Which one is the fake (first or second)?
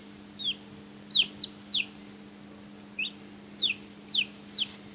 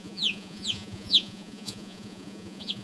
second